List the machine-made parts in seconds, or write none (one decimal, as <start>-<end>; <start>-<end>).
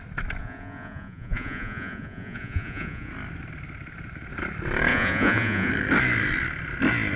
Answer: 0.4-3.1; 4.9-5.7